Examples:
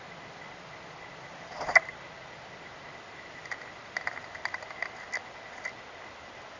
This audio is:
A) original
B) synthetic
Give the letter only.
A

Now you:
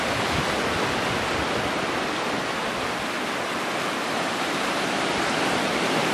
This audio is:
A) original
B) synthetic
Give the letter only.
A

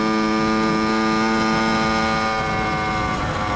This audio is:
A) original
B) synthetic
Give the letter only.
A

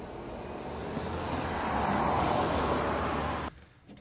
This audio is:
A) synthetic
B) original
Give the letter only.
B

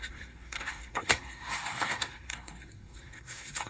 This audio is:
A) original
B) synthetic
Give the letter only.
B